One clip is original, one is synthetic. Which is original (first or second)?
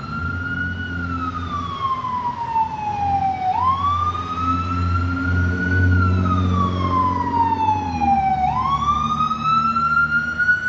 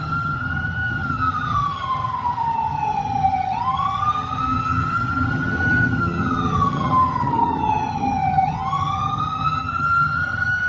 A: first